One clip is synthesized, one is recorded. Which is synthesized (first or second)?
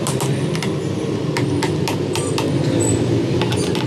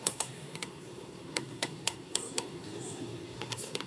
second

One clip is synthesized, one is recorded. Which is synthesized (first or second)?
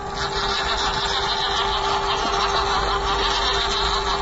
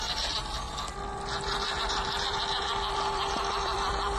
second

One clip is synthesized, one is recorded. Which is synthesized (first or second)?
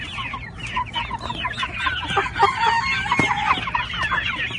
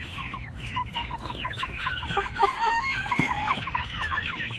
second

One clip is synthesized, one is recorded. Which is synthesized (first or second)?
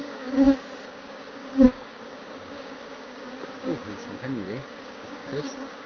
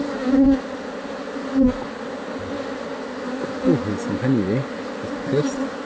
first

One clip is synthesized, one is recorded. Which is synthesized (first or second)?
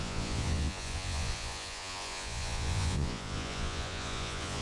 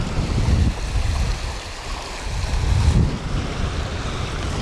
first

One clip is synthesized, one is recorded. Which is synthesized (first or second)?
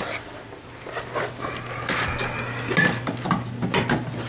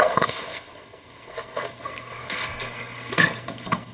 second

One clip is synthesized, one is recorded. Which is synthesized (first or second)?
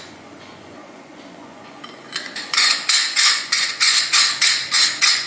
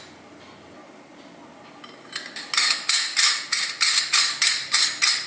first